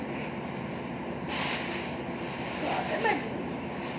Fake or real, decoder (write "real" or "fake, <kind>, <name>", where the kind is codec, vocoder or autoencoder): real